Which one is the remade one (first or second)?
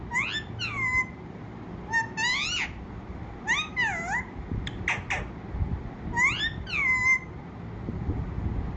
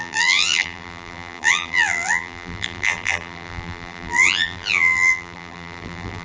second